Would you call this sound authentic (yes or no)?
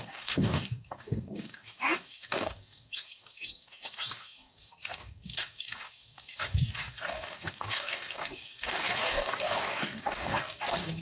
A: no